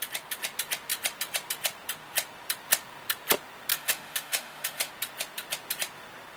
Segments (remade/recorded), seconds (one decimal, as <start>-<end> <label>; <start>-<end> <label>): 0.0-3.7 recorded; 3.7-4.9 remade; 4.9-6.4 recorded